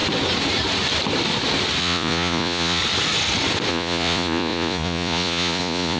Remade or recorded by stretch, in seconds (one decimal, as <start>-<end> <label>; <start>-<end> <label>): 0.0-1.8 recorded; 1.8-2.8 remade; 2.8-3.7 recorded; 3.7-6.0 remade